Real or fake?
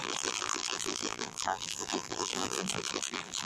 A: fake